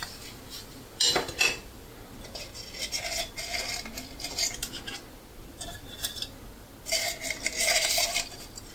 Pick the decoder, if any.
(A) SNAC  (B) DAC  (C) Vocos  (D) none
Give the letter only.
D